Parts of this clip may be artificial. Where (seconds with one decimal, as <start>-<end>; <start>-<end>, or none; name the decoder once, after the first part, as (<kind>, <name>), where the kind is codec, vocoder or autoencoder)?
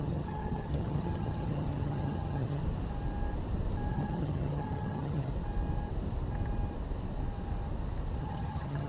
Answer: 0.0-2.6 (vocoder, HiFi-GAN); 3.9-5.3; 8.2-8.9